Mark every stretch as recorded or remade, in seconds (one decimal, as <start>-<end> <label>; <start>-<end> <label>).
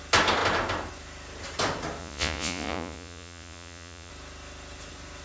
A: 0.0-2.0 recorded; 2.0-4.1 remade; 4.1-5.2 recorded